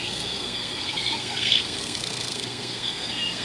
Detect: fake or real fake